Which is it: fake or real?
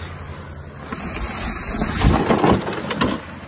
real